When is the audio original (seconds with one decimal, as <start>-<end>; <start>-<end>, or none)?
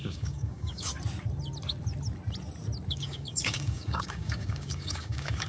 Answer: 0.9-2.9